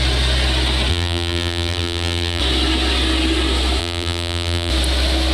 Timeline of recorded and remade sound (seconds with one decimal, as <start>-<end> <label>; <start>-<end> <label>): 0.0-0.9 recorded; 0.9-2.4 remade; 2.4-3.8 recorded; 3.8-4.7 remade; 4.7-5.3 recorded